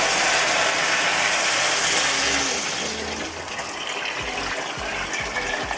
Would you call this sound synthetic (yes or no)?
no